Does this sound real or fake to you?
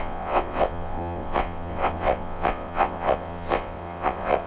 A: fake